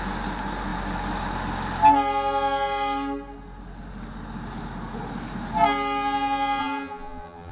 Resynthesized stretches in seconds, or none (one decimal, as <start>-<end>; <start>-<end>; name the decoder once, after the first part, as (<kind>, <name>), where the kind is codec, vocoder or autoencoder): 6.6-7.5 (vocoder, BigVGAN v2)